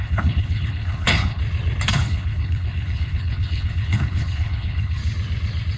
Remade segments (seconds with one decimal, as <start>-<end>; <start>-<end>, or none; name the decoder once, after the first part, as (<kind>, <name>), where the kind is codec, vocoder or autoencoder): 0.0-1.4 (codec, HILCodec); 1.9-5.0